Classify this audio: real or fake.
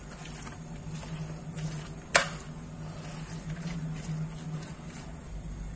real